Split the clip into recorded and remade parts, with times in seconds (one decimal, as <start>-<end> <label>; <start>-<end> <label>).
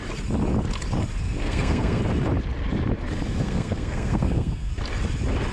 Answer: 0.0-1.4 recorded; 1.4-2.0 remade; 2.0-3.4 recorded; 3.4-4.7 remade; 4.7-5.5 recorded